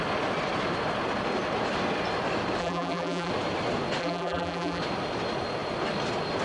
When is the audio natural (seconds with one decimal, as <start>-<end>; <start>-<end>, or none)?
0.0-2.6; 3.3-4.0; 4.8-6.4